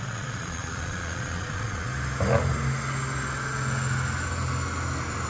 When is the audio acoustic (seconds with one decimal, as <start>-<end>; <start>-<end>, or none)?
1.9-5.3